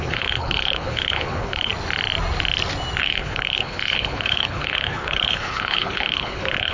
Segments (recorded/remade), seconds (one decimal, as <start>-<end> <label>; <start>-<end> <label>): 0.0-1.7 remade; 1.7-3.0 recorded; 3.0-6.7 remade